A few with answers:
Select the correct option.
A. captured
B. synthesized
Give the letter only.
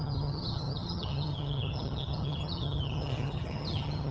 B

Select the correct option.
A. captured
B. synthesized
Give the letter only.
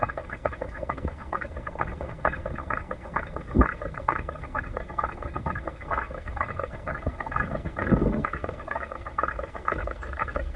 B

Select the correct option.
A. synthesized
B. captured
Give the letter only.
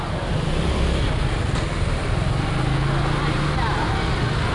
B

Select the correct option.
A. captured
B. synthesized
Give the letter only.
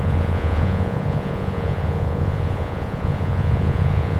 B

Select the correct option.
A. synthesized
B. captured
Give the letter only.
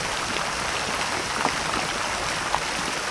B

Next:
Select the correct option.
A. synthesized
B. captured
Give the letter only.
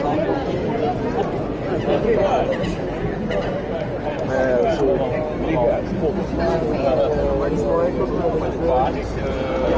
B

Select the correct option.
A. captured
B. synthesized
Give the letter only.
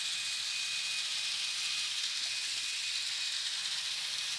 A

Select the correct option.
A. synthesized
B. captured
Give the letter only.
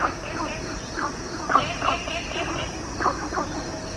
B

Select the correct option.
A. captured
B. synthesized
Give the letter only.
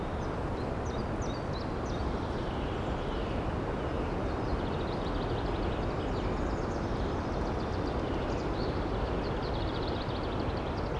A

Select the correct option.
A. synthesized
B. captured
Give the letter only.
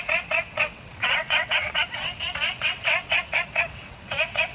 A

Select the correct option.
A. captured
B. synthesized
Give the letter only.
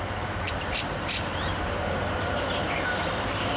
B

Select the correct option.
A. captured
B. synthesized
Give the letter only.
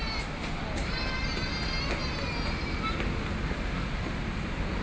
A